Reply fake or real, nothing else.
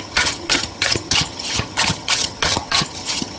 fake